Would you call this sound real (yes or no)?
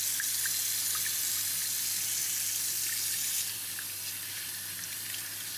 yes